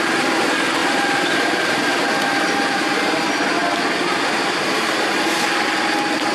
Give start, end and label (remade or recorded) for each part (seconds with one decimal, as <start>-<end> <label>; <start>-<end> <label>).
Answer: 0.0-0.8 recorded; 0.8-1.9 remade; 1.9-6.3 recorded